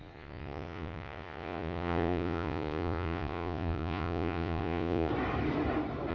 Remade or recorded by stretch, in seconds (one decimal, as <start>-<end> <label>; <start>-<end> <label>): 0.0-5.1 remade; 5.1-6.1 recorded